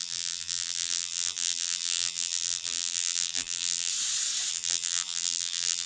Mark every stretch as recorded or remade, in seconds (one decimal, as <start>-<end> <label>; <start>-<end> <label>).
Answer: 0.0-3.9 remade; 3.9-4.5 recorded; 4.5-5.9 remade

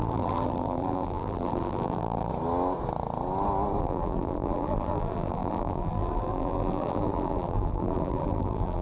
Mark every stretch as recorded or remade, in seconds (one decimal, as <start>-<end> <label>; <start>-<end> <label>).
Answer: 0.0-2.3 remade; 2.3-3.8 recorded; 3.8-8.8 remade